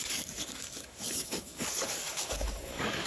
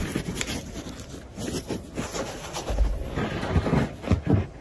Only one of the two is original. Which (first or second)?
second